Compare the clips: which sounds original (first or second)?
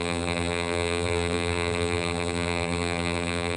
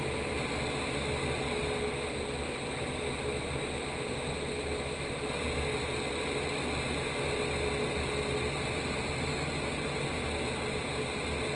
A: second